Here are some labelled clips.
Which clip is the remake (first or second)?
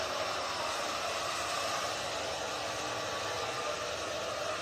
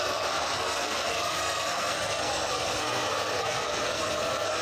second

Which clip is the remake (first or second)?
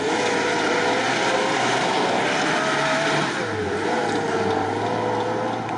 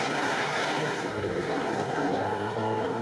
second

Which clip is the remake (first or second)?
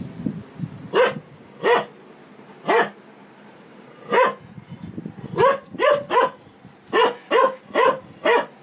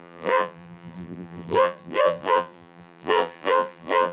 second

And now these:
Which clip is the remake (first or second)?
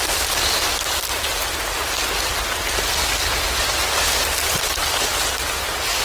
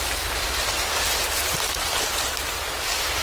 second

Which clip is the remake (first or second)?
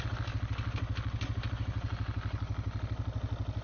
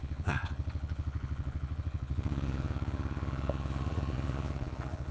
second